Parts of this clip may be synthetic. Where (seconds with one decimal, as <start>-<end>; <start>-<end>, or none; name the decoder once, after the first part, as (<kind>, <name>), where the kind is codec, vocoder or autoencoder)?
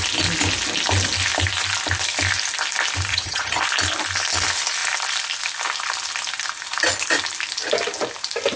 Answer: 3.1-3.6 (vocoder, HiFi-GAN)